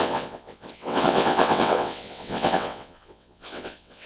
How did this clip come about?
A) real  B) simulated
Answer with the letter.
B